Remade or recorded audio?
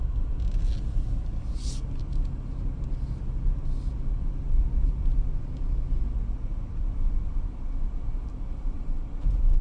recorded